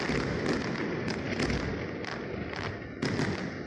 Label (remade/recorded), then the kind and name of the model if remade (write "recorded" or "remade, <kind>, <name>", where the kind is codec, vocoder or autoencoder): recorded